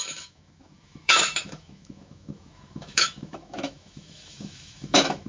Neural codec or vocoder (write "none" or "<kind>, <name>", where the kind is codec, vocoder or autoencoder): autoencoder, DAC-VAE